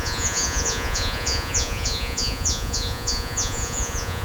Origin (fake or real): fake